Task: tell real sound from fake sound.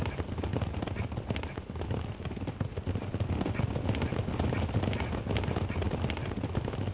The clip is real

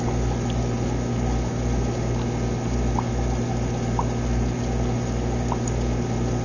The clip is real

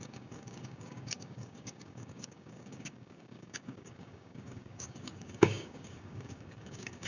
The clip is fake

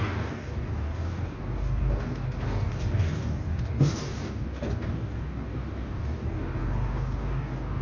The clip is fake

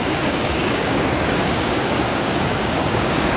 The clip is fake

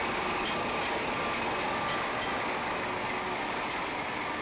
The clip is real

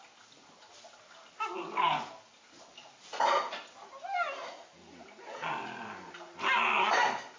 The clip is real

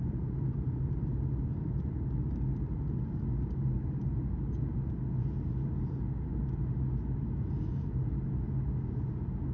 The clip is real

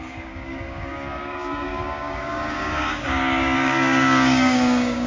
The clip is fake